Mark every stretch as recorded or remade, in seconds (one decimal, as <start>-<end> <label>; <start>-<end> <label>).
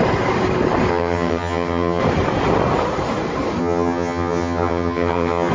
0.0-0.9 recorded; 0.9-2.0 remade; 2.0-3.6 recorded; 3.6-5.5 remade